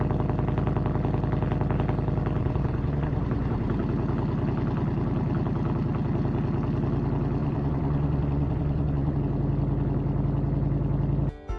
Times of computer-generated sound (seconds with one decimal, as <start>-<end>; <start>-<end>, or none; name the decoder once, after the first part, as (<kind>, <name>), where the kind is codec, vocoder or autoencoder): 2.4-3.8 (vocoder, Vocos); 7.4-9.2